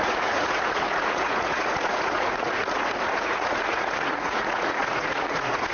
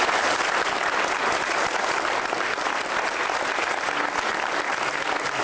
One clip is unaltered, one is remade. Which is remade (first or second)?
first